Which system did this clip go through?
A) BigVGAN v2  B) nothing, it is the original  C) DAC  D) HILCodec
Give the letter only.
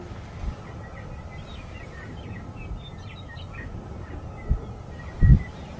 B